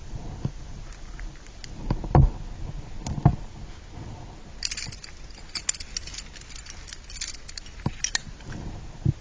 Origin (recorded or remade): recorded